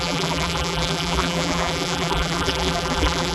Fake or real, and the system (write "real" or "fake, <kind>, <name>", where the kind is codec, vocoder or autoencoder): fake, vocoder, BigVGAN v2